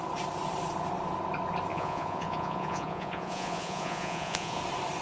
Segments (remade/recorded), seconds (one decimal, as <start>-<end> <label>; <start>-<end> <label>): 0.0-1.7 recorded; 1.7-4.6 remade; 4.6-5.0 recorded